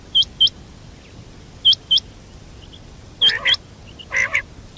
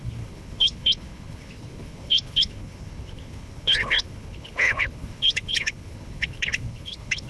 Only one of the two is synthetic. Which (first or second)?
second